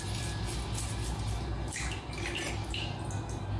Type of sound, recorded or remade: recorded